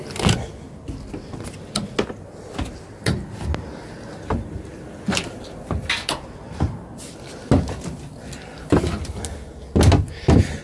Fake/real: real